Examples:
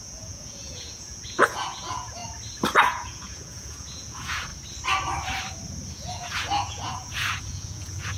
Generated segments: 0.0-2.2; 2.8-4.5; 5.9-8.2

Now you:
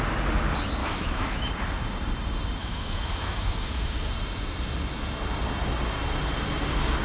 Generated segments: 0.8-1.5; 2.6-4.1

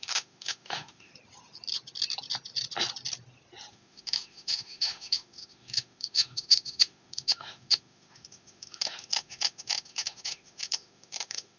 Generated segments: 0.0-1.1; 3.7-11.6